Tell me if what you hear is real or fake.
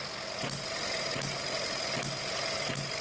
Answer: real